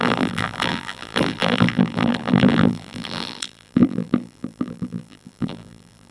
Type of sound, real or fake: fake